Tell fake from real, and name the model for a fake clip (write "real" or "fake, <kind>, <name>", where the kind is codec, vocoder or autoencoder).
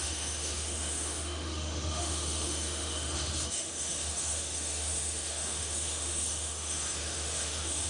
fake, autoencoder, DAC-VAE